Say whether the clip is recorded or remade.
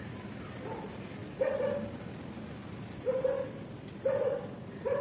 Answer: recorded